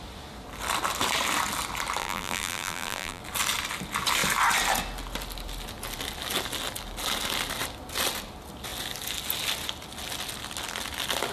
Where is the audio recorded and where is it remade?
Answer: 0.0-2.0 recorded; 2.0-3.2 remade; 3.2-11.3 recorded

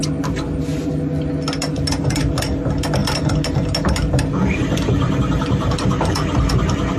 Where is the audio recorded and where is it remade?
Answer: 0.0-0.9 remade; 0.9-1.7 recorded; 1.7-2.3 remade; 2.3-3.0 recorded; 3.0-6.1 remade; 6.1-7.0 recorded

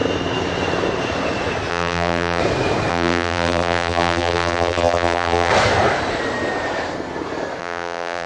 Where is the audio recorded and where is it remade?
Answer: 0.0-1.7 recorded; 1.7-2.4 remade; 2.4-2.9 recorded; 2.9-5.5 remade; 5.5-7.6 recorded; 7.6-8.3 remade

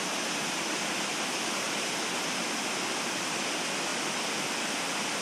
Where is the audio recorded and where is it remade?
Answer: 0.0-5.2 recorded

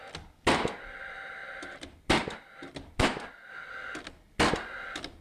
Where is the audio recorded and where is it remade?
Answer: 0.0-5.2 recorded

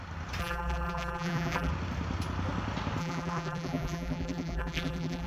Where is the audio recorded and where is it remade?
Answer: 0.0-0.4 recorded; 0.4-1.7 remade; 1.7-3.0 recorded; 3.0-5.3 remade

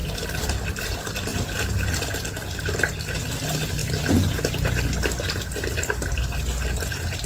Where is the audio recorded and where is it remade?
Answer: 0.0-1.3 recorded; 1.3-1.9 remade; 1.9-7.3 recorded